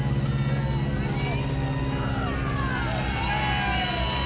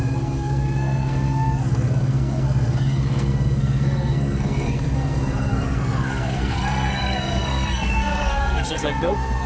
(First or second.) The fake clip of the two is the second